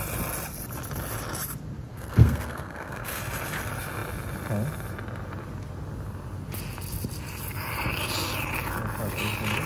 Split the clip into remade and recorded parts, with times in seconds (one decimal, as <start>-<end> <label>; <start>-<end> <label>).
0.0-1.9 recorded; 1.9-3.2 remade; 3.2-9.7 recorded